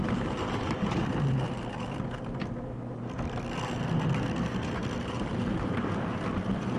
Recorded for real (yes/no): yes